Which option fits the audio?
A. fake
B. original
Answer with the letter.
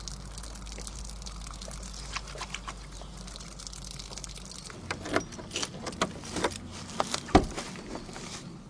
B